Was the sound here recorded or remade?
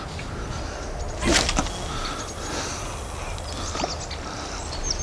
recorded